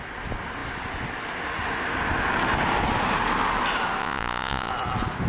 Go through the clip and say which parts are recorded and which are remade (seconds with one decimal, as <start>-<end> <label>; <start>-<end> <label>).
0.0-4.0 recorded; 4.0-4.7 remade; 4.7-5.3 recorded